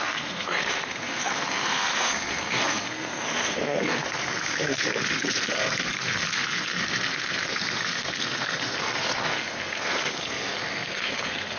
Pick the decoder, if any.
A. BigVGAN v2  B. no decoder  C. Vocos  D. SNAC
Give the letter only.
D